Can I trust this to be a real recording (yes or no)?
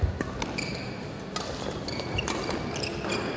yes